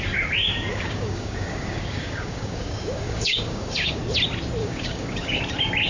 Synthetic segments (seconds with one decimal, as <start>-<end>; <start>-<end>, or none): 0.7-4.0; 4.6-5.4